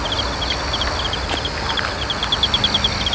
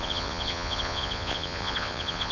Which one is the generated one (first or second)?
second